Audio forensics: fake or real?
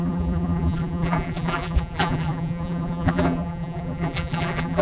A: fake